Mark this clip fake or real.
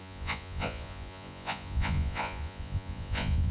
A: fake